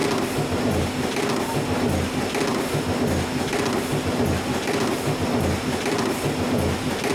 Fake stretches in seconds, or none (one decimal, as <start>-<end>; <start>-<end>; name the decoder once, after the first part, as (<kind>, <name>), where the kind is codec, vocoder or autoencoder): none